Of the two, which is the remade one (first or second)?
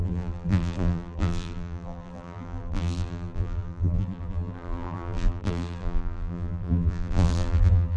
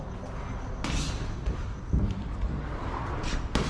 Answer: first